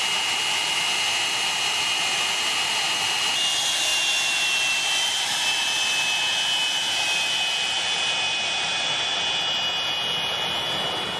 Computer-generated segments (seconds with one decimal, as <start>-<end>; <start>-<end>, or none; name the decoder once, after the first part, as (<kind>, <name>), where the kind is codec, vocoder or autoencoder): none